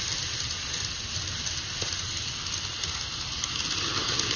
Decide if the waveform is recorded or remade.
recorded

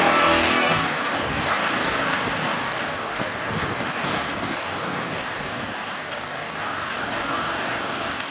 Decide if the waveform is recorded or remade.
remade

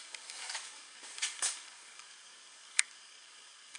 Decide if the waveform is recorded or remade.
remade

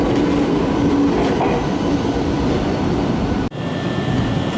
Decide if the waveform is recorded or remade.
recorded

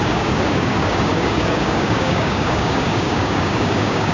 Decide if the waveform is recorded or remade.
remade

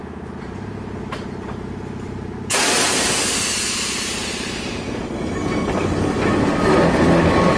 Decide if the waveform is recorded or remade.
recorded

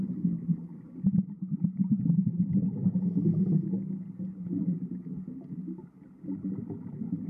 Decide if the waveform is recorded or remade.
recorded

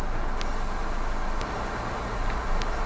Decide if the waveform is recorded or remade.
recorded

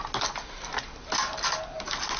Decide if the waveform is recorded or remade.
recorded